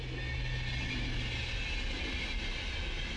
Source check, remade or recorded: recorded